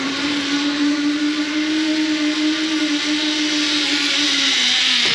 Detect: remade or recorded recorded